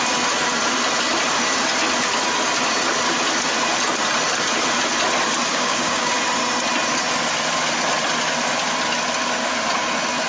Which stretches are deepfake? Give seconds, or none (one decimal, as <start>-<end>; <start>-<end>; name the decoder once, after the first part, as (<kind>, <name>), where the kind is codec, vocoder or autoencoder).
5.5-6.1 (codec, DAC)